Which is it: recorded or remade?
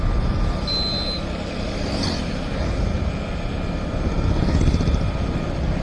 recorded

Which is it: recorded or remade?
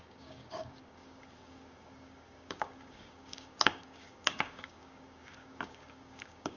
remade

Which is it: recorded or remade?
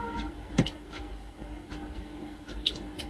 remade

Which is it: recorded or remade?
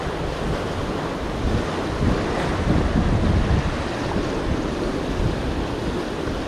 recorded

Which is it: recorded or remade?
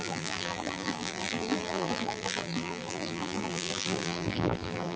remade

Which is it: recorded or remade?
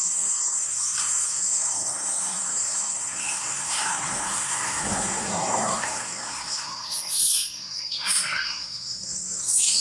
remade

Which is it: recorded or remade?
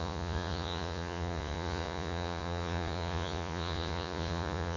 remade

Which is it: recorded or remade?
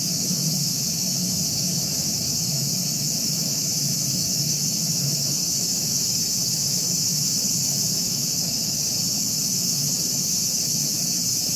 remade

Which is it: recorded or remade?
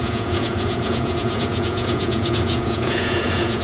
remade